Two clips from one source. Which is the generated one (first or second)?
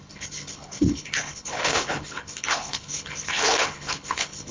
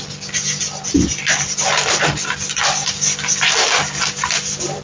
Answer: first